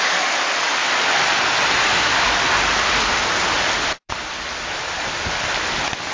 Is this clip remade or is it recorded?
recorded